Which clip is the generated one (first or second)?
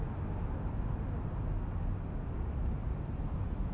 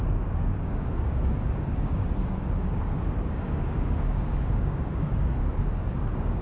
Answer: second